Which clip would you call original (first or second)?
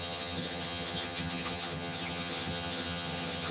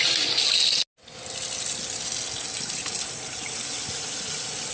second